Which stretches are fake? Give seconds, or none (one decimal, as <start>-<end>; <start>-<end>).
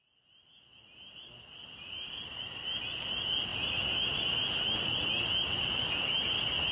none